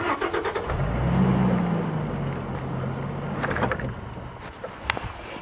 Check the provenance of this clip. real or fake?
real